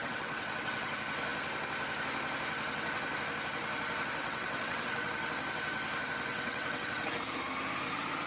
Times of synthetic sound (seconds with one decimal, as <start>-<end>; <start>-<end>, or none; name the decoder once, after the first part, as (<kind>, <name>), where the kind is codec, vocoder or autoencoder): 0.0-0.9 (vocoder, WaveNeXt); 4.2-5.1; 6.3-7.0